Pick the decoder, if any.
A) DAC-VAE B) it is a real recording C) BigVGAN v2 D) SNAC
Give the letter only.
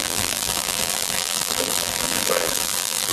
C